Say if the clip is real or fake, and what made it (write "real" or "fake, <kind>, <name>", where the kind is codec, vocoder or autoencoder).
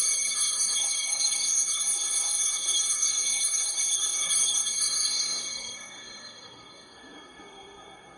fake, codec, SNAC